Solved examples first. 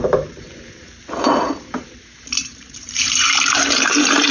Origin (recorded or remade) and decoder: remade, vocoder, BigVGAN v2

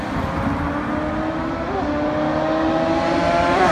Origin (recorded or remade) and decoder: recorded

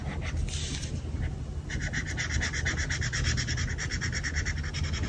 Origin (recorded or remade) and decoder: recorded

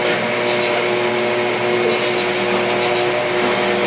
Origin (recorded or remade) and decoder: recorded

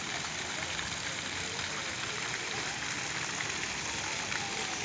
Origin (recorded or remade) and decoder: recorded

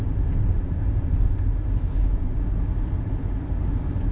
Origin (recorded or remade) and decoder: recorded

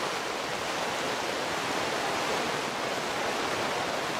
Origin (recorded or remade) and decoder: recorded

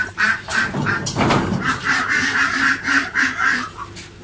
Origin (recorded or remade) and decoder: remade, vocoder, BigVGAN v2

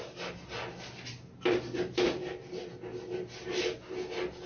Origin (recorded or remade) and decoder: recorded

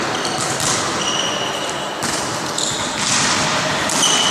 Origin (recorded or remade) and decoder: recorded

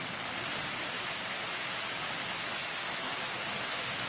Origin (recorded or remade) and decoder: recorded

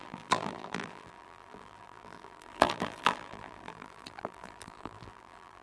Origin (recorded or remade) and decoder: remade, vocoder, BigVGAN v2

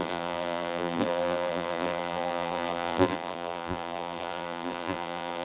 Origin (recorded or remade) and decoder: remade, vocoder, BigVGAN v2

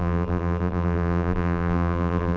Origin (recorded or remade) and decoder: remade, vocoder, BigVGAN v2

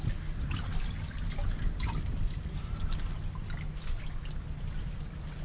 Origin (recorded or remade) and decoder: recorded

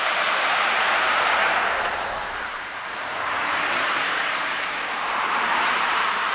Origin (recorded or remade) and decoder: remade, vocoder, BigVGAN v2